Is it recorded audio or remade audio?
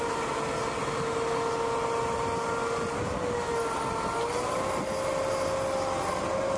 recorded